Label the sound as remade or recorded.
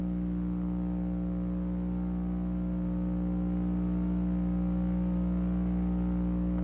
recorded